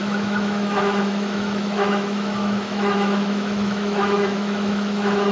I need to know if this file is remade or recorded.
remade